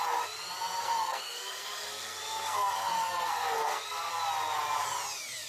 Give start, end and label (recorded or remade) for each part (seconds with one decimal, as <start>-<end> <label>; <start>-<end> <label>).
0.0-0.8 recorded; 0.8-4.1 remade; 4.1-5.5 recorded